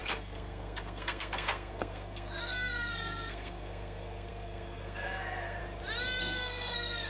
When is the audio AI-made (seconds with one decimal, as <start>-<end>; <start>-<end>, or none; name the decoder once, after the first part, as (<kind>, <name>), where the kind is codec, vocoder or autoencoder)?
0.0-5.6 (codec, SNAC); 6.2-7.1